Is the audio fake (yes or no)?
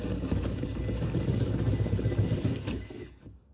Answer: yes